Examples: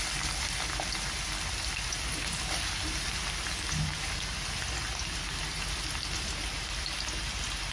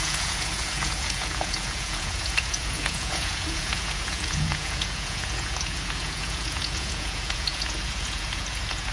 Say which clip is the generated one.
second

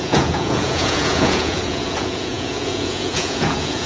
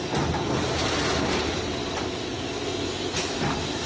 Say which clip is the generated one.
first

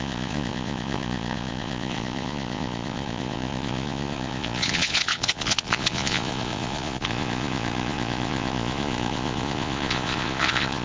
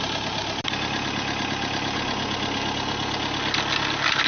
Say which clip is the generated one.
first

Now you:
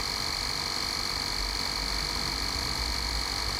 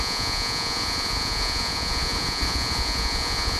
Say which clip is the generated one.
second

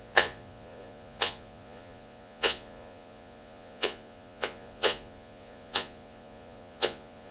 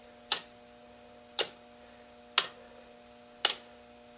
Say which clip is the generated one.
first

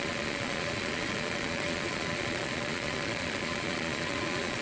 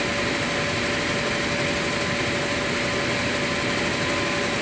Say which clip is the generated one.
first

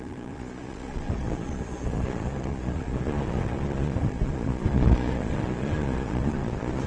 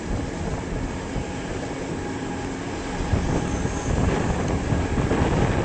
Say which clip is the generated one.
first